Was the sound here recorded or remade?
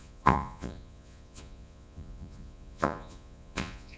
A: remade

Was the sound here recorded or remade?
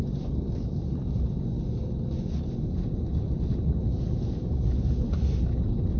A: recorded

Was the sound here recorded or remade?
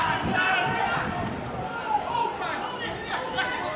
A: recorded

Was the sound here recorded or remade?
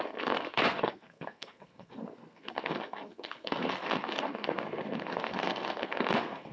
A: remade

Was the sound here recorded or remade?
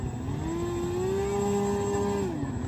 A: recorded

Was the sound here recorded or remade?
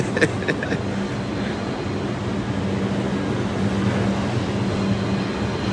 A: recorded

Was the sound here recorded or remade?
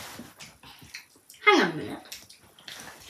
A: recorded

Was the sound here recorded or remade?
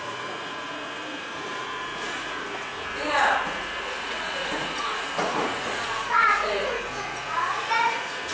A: remade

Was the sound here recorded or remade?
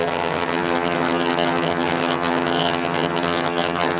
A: remade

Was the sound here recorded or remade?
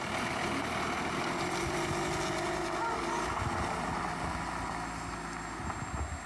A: recorded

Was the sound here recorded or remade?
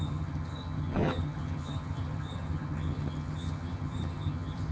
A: remade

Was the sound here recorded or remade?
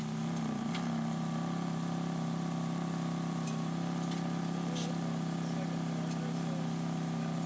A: recorded